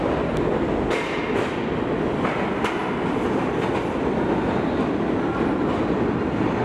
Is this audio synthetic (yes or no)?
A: no